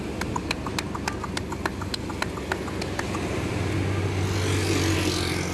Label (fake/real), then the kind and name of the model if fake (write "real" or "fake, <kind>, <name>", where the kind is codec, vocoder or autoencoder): real